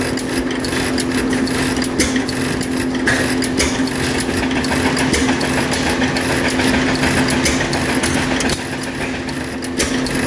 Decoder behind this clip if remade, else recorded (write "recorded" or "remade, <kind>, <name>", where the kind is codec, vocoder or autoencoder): recorded